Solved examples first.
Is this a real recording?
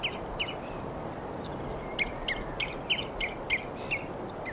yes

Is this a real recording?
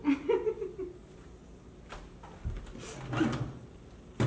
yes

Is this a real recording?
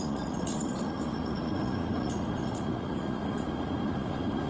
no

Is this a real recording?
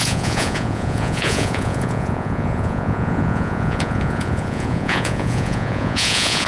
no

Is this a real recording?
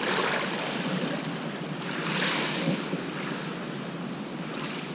yes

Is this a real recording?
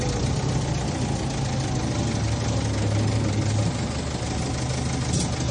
yes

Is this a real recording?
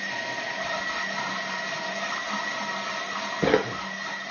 yes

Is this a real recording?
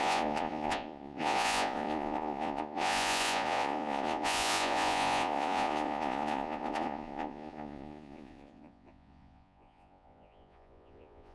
no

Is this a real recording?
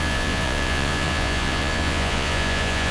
no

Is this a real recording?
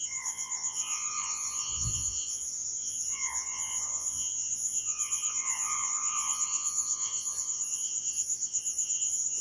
no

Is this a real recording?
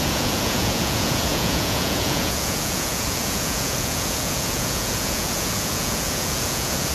no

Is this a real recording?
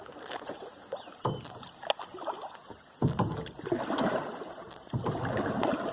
yes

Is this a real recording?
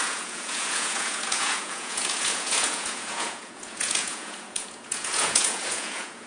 no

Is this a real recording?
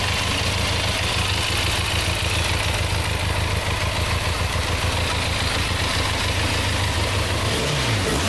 yes